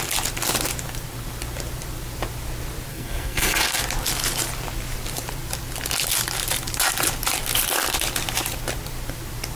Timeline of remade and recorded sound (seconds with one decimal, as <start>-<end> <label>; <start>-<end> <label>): 0.0-2.9 recorded; 2.9-3.8 remade; 3.8-9.6 recorded